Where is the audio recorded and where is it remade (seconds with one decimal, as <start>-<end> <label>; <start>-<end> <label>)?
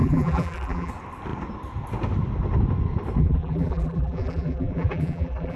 0.0-0.9 remade; 0.9-3.2 recorded; 3.2-5.6 remade